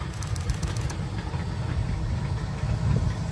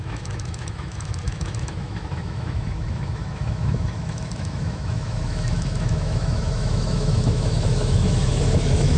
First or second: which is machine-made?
second